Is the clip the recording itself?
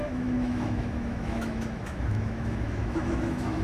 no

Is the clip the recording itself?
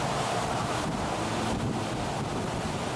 yes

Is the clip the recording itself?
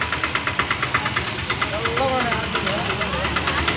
yes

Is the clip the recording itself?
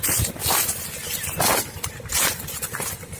yes